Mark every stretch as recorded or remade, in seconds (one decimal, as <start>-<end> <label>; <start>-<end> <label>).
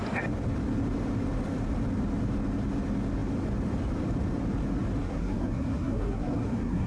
0.0-5.0 recorded; 5.0-6.9 remade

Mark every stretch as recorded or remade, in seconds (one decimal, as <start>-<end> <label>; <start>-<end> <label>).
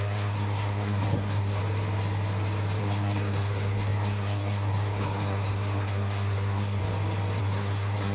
0.0-1.6 remade; 1.6-2.8 recorded; 2.8-6.8 remade; 6.8-7.4 recorded; 7.4-8.1 remade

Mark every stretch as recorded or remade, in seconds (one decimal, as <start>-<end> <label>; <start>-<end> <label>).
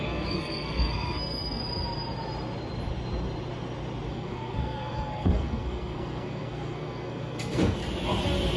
0.0-1.6 remade; 1.6-4.1 recorded; 4.1-7.8 remade; 7.8-8.6 recorded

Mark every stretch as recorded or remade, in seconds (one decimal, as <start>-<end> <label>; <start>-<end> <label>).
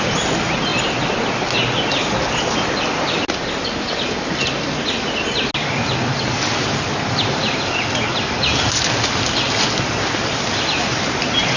0.0-11.6 recorded